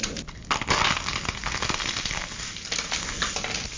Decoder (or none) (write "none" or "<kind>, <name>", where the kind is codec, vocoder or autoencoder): none